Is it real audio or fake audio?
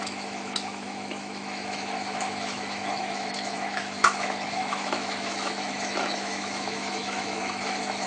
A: fake